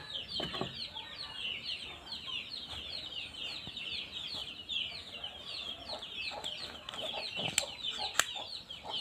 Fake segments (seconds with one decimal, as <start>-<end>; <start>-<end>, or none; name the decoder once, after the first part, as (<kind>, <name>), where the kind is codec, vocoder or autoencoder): none